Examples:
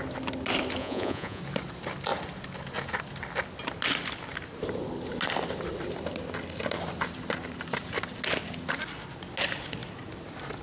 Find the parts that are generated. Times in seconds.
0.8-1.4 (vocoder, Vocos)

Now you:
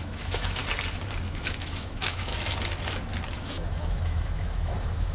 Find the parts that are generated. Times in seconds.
0.0-0.6 (autoencoder, DAC-VAE); 1.3-2.3; 3.3-5.1

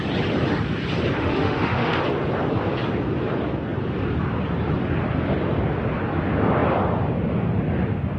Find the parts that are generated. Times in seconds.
1.2-2.0 (autoencoder, DAC-VAE)

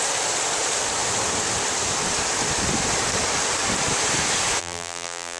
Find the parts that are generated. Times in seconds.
4.6-5.4 (vocoder, BigVGAN v2)

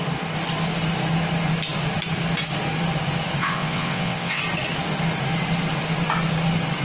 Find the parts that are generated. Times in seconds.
3.4-4.4 (vocoder, WaveNeXt)

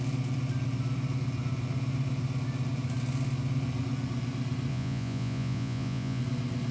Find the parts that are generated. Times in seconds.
4.7-6.2 (vocoder, Vocos)

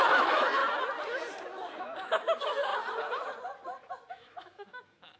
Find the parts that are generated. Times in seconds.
0.0-0.6 (autoencoder, DAC-VAE); 1.8-2.7; 4.1-5.2

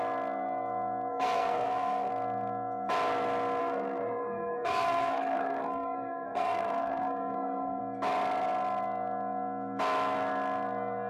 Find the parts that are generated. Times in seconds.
1.1-2.1 (codec, SNAC); 3.6-7.8